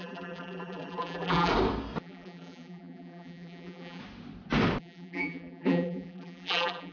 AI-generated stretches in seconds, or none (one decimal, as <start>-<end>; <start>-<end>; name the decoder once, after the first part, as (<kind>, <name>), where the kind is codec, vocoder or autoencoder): 0.0-1.5 (vocoder, BigVGAN v2); 2.0-4.0; 4.8-6.9